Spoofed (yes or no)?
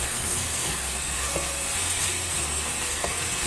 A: yes